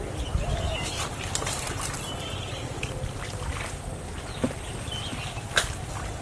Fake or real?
real